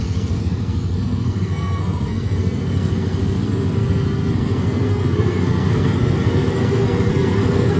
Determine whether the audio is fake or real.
fake